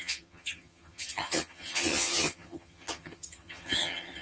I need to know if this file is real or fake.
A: fake